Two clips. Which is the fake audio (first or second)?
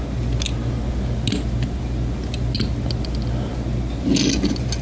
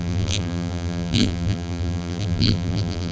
second